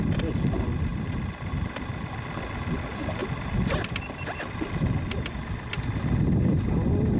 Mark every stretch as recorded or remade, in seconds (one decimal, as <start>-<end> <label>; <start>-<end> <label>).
0.0-0.9 recorded; 0.9-1.5 remade; 1.5-3.2 recorded; 3.2-4.7 remade; 4.7-7.2 recorded